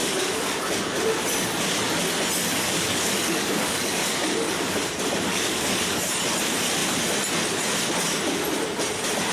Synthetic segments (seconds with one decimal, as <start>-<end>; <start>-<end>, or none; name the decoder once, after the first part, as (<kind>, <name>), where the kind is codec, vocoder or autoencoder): 0.0-1.1 (codec, DAC); 2.5-4.8; 5.3-6.1